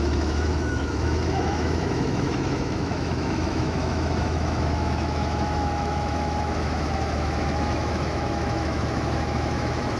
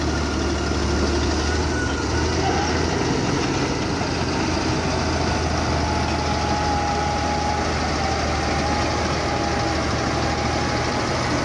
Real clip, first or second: second